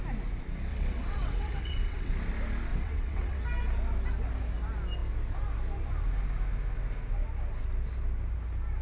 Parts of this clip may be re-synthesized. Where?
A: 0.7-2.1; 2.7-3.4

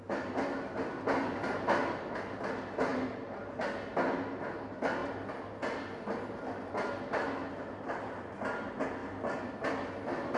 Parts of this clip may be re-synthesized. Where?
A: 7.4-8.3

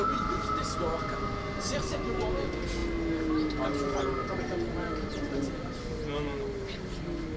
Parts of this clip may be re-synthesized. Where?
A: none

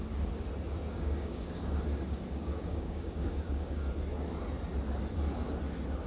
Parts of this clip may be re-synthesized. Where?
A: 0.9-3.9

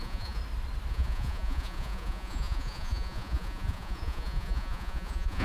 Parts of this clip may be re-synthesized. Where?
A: 0.0-0.4; 0.9-5.4

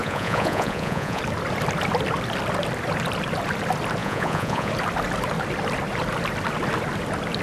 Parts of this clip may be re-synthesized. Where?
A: 0.0-1.2; 4.0-4.7

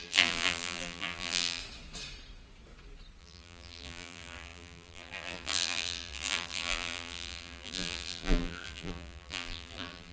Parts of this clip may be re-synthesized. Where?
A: 0.0-1.6; 3.2-10.1